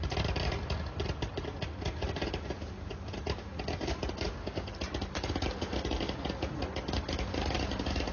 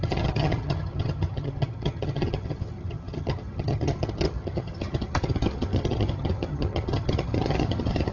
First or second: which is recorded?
first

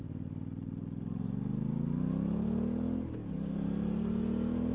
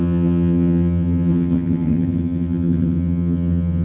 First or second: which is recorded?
first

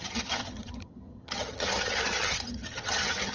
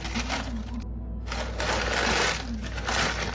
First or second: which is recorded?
second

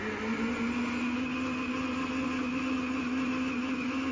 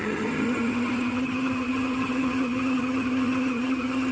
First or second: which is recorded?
first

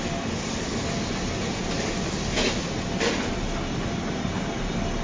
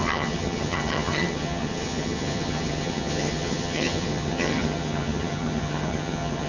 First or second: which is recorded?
first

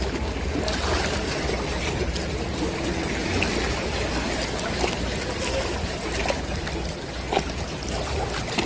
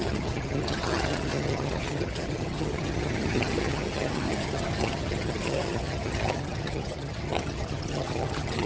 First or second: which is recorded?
first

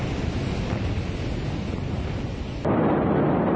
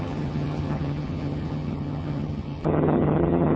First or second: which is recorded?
first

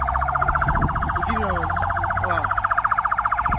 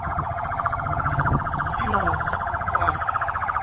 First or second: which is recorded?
first